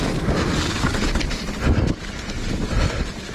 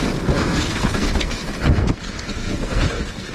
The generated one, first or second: second